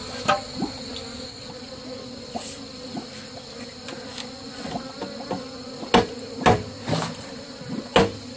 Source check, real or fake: real